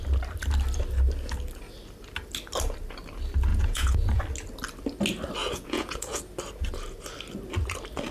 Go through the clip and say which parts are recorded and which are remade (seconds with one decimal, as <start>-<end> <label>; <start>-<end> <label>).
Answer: 0.0-3.5 recorded; 3.5-4.2 remade; 4.2-5.4 recorded; 5.4-6.2 remade; 6.2-8.1 recorded